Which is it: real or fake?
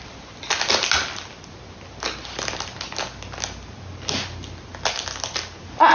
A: real